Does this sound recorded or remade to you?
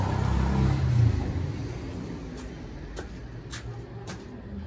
recorded